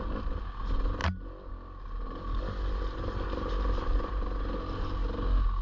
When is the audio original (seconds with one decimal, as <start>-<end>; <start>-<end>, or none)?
0.0-5.6